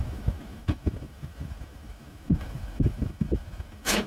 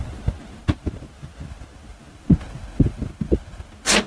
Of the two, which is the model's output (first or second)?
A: first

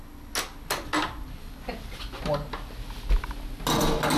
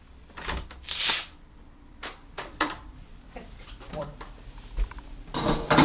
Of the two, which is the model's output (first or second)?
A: second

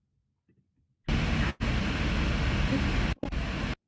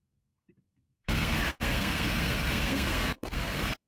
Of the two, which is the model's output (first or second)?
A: second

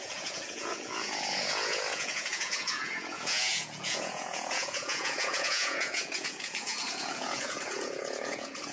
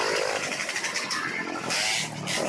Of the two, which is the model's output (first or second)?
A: first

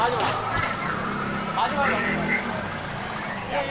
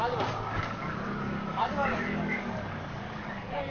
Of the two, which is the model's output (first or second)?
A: second